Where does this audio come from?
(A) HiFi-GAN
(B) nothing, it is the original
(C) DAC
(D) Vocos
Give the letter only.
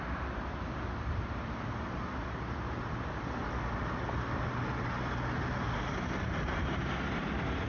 B